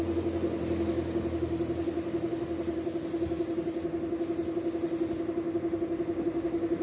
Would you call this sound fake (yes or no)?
no